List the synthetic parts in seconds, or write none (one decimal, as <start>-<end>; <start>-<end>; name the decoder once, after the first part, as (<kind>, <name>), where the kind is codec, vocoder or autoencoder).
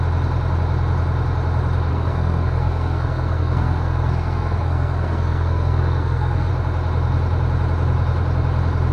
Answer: 1.9-6.5 (codec, SNAC)